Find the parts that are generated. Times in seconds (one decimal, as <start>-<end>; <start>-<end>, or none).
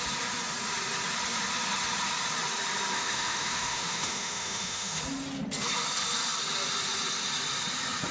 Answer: 2.9-5.0